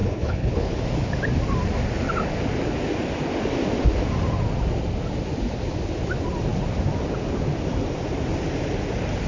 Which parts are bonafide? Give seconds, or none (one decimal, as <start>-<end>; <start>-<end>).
0.7-9.3